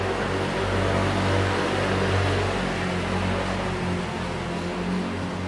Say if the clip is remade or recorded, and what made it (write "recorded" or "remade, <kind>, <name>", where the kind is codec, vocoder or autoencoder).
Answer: recorded